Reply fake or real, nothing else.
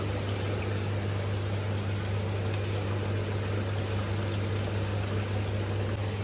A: real